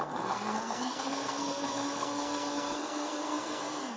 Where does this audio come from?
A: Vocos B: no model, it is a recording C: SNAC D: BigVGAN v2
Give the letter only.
C